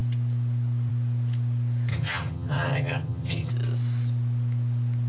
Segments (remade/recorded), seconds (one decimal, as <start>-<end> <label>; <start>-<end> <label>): 0.0-1.9 recorded; 1.9-3.5 remade; 3.5-5.1 recorded